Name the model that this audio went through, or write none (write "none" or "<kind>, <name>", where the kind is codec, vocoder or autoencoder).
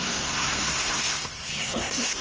codec, SNAC